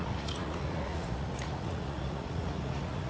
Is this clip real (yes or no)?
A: no